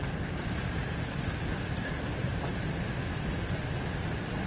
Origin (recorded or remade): recorded